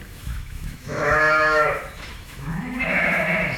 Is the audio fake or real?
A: fake